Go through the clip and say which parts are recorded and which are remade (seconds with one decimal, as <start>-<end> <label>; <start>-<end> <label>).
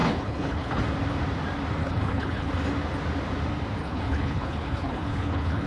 0.0-0.8 remade; 0.8-1.8 recorded; 1.8-2.5 remade; 2.5-3.8 recorded; 3.8-5.7 remade